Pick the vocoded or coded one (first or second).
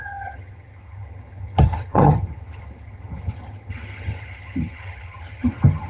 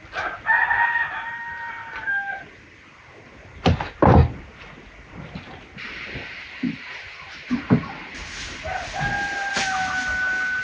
first